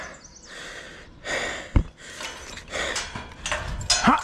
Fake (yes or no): no